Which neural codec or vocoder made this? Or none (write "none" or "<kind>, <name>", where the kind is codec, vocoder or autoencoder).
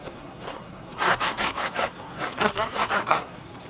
codec, SNAC